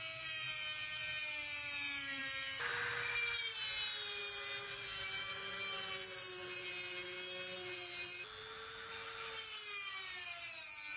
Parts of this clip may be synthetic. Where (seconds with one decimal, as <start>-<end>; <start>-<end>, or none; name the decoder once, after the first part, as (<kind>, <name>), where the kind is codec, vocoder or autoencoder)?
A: none